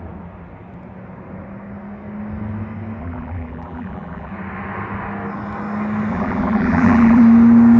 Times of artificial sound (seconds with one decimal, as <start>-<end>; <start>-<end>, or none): 3.0-4.3; 6.1-7.2